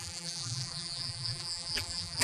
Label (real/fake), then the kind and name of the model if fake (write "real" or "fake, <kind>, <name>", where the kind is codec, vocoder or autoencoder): fake, vocoder, BigVGAN v2